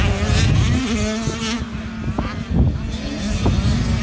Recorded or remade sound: recorded